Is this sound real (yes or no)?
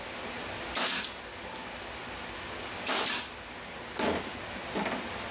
yes